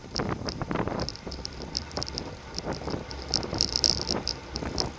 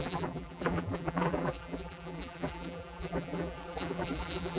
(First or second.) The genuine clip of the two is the first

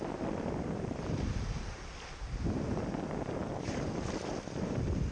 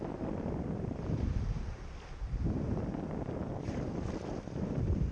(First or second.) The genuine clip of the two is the first